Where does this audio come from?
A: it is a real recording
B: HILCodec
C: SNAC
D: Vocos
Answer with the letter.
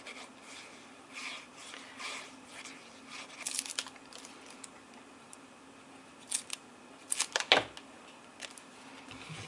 A